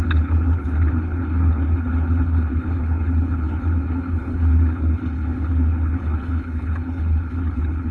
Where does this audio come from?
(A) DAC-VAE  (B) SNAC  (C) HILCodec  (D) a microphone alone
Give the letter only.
C